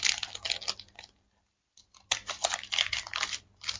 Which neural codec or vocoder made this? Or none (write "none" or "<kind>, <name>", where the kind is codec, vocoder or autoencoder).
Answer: none